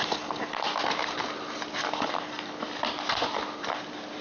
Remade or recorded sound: recorded